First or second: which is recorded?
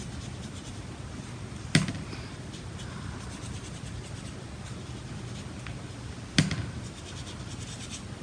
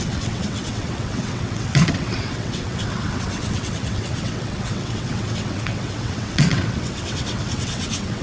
first